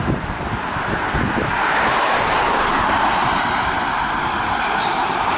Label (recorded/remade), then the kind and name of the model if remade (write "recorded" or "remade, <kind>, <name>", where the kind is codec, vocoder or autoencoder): remade, vocoder, BigVGAN v2